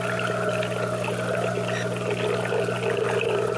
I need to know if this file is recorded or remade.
recorded